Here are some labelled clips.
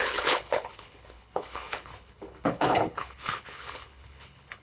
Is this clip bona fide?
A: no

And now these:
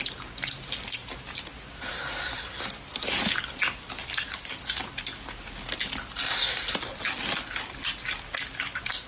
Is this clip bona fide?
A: yes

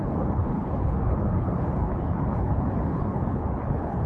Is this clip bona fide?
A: no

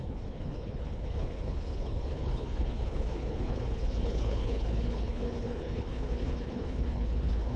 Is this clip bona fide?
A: no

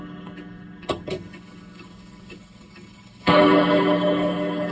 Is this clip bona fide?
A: no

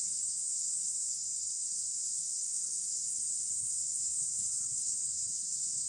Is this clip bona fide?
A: no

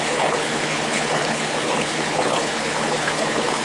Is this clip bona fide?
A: no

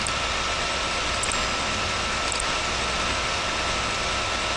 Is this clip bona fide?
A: yes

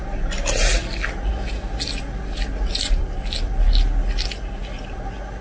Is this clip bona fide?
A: yes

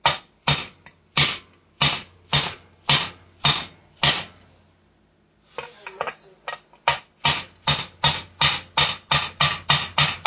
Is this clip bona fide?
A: yes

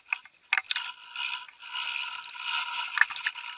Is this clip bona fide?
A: yes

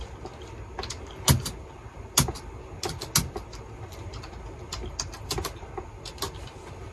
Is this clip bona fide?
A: yes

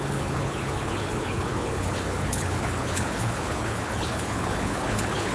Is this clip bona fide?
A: no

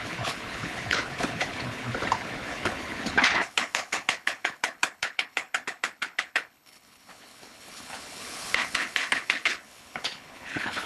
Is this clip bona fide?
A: no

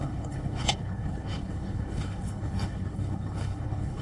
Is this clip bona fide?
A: no